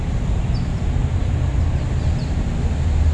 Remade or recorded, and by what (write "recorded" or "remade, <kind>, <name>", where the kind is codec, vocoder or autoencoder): recorded